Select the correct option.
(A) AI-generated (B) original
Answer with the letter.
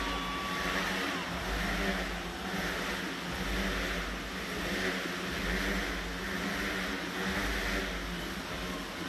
B